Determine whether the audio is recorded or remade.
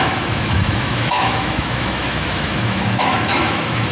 remade